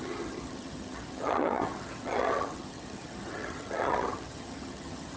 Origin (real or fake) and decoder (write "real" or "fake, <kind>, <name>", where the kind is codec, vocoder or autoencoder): fake, vocoder, HiFi-GAN